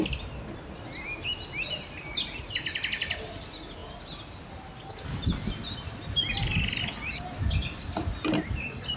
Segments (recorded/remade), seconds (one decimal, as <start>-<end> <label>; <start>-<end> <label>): 0.0-7.6 recorded; 7.6-8.5 remade; 8.5-9.0 recorded